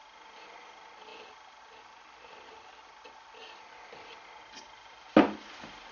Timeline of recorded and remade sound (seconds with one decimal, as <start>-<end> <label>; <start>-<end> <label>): 0.0-5.9 recorded